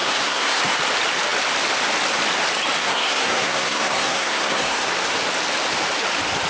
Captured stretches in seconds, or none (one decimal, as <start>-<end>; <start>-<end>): 0.6-2.8; 4.9-6.5